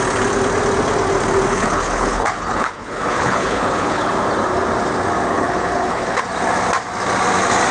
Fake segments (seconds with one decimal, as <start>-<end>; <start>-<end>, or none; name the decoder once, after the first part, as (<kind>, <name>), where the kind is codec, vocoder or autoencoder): 1.5-4.1 (codec, HILCodec); 5.3-6.2